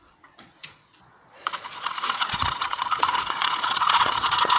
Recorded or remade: remade